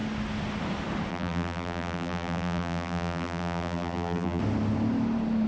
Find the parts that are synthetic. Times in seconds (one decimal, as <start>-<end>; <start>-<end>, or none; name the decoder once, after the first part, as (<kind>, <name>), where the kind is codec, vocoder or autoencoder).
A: 1.1-4.4 (vocoder, BigVGAN v2)

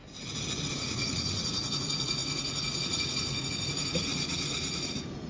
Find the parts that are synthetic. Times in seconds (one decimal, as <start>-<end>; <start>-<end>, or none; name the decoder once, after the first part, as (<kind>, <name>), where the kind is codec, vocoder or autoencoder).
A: 0.7-5.3 (vocoder, Vocos)

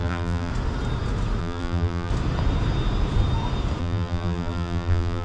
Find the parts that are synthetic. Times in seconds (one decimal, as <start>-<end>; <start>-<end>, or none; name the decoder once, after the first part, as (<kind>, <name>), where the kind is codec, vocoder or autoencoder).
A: 0.0-0.5 (vocoder, BigVGAN v2); 1.4-2.1; 3.8-5.2

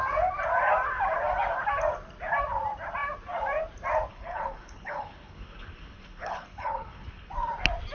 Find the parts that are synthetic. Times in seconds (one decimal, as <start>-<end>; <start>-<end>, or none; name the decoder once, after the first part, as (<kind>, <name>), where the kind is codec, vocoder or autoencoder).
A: 4.1-7.3 (codec, HILCodec)

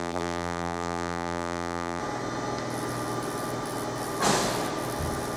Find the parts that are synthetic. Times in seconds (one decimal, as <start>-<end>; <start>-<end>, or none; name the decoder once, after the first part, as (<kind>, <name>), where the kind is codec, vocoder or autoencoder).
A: 0.0-2.0 (vocoder, BigVGAN v2)

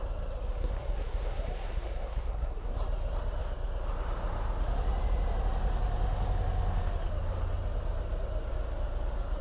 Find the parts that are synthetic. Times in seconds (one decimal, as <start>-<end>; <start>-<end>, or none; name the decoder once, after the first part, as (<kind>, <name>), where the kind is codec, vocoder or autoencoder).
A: 0.6-2.7 (codec, SNAC)